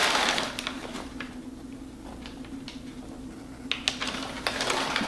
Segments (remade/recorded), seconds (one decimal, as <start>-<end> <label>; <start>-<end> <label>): 0.0-5.1 recorded